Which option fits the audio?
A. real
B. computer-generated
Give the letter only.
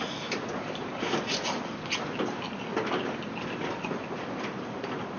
A